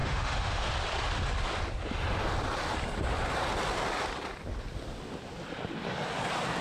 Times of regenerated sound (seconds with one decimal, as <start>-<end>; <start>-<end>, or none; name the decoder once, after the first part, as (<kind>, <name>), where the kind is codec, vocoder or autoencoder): 0.0-0.7 (autoencoder, DAC-VAE)

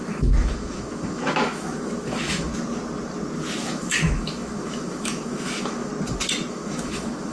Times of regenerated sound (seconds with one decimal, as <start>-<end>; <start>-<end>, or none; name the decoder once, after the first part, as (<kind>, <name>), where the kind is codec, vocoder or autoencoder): 0.0-2.5 (autoencoder, DAC-VAE); 3.5-5.9; 6.5-7.3

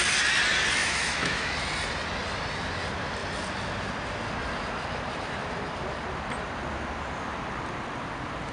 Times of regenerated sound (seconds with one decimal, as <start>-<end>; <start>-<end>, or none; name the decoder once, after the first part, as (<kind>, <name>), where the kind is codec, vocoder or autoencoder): 0.8-1.5 (autoencoder, DAC-VAE)

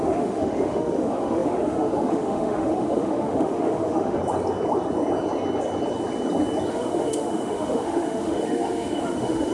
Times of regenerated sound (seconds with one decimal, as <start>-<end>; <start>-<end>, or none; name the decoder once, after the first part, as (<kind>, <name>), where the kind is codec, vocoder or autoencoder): 0.0-4.2 (autoencoder, DAC-VAE); 6.7-9.5

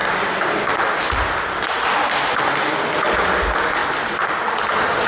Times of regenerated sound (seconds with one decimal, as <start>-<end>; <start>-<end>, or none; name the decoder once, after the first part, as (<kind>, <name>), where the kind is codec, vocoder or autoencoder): none